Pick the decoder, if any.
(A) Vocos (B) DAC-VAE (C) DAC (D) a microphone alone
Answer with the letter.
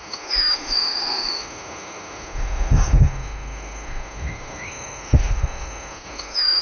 B